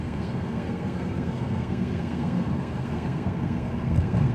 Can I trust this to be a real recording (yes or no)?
no